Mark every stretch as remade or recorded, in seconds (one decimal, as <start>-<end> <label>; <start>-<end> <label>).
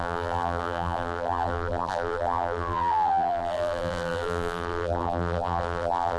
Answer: 0.0-6.2 remade